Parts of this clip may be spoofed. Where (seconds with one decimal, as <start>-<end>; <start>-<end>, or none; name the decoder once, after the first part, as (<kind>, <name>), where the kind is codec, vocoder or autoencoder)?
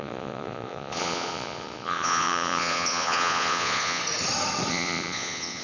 0.0-4.0 (vocoder, Vocos); 4.7-5.6